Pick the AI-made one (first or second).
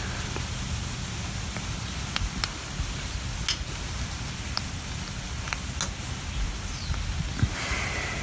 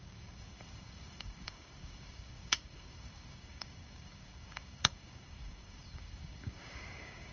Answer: second